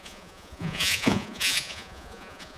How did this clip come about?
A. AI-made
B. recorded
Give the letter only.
A